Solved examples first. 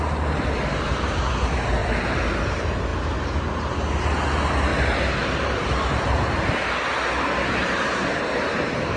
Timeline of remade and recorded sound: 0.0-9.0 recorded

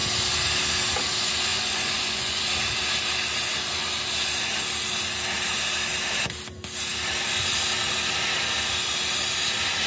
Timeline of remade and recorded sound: 0.0-1.5 recorded; 1.5-2.4 remade; 2.4-9.9 recorded